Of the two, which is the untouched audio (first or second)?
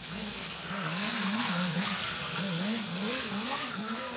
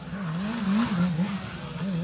second